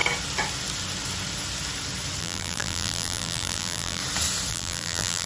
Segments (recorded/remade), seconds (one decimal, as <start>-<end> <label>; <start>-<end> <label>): 0.0-2.2 recorded; 2.2-4.0 remade; 4.0-4.5 recorded; 4.5-5.3 remade